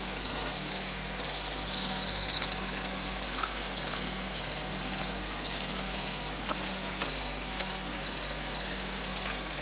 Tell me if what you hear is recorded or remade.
remade